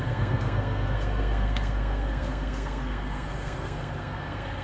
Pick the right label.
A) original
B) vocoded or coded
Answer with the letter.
B